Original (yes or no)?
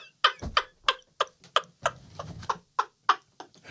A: yes